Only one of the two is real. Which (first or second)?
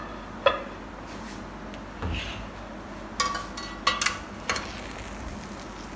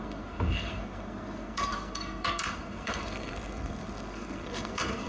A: first